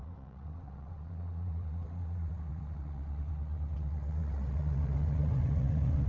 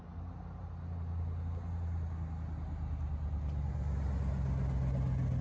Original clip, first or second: second